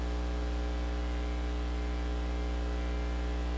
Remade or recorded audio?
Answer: recorded